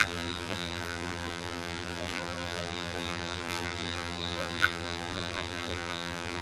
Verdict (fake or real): fake